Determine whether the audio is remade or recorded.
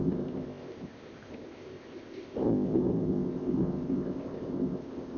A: remade